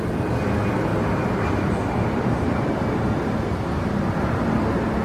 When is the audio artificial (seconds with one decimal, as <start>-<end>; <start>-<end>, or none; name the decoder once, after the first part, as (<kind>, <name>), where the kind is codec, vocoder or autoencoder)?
0.9-2.7 (vocoder, BigVGAN v2)